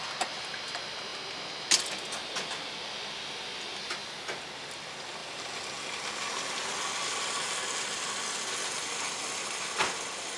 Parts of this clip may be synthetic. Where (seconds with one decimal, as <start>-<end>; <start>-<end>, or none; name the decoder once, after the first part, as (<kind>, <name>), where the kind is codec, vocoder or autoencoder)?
none